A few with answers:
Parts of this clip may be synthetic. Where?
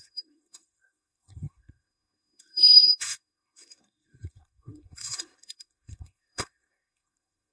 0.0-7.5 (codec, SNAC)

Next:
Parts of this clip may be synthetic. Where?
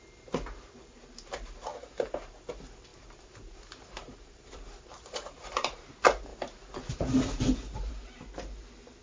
1.7-2.5 (vocoder, BigVGAN v2); 2.9-5.8; 6.3-7.9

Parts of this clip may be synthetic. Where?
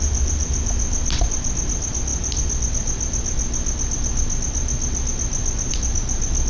none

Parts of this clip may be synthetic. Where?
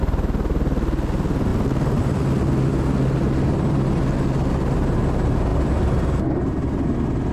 none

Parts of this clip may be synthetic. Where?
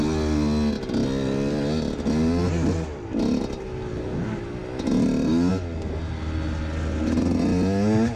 none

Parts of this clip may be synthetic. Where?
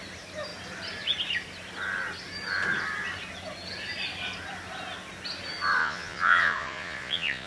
5.8-7.5 (vocoder, Vocos)